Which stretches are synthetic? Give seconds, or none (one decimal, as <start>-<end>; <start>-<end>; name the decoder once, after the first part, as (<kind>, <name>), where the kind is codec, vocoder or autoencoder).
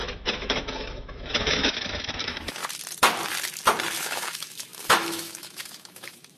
0.0-2.6 (autoencoder, DAC-VAE); 4.0-6.4